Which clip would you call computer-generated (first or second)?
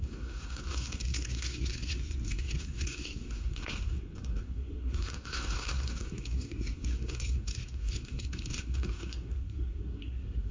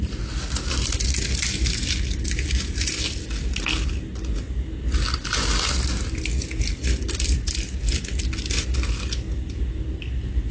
first